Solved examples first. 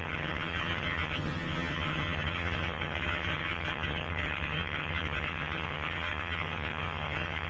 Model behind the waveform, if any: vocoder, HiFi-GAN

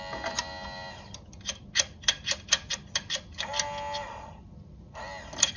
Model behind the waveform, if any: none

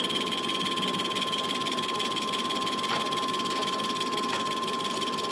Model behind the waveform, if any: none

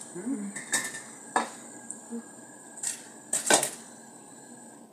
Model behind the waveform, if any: vocoder, BigVGAN v2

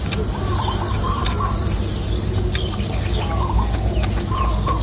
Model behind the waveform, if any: none